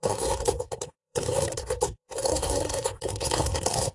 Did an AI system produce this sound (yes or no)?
yes